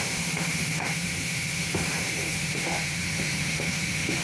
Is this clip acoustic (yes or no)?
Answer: no